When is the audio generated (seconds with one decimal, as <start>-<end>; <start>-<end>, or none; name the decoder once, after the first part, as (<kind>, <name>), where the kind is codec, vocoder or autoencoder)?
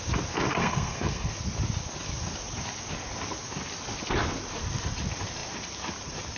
0.6-1.3 (codec, SNAC)